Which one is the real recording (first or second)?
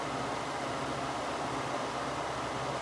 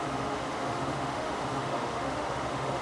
first